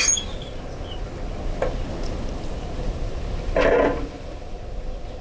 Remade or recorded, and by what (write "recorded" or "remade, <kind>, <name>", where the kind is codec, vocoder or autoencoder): recorded